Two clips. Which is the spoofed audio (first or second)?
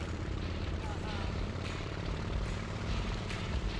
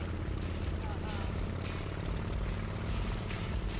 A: first